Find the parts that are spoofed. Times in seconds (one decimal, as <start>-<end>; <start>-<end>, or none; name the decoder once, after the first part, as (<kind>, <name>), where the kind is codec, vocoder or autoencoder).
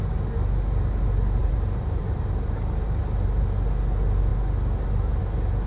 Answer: 1.4-3.0 (vocoder, BigVGAN v2)